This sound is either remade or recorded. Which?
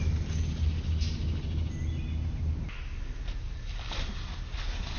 recorded